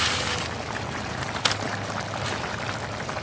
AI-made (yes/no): yes